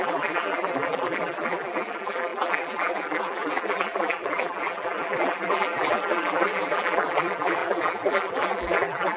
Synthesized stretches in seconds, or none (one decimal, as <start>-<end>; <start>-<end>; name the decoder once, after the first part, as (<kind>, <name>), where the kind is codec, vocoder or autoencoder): 0.0-9.2 (vocoder, BigVGAN v2)